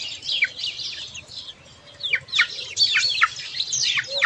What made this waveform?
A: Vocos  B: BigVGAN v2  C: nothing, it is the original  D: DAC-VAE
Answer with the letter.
C